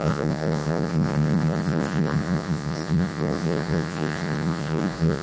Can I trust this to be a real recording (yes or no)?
no